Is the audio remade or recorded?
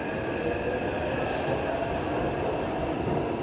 recorded